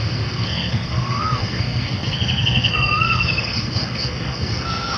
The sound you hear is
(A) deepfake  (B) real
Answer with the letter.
A